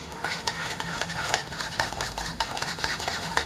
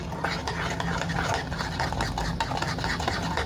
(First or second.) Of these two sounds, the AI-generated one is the first